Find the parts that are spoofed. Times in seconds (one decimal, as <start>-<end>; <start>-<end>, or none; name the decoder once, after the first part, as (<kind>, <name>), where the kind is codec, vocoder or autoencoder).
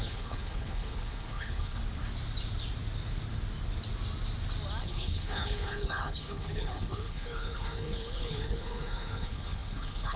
0.0-1.8 (codec, HILCodec); 4.8-10.2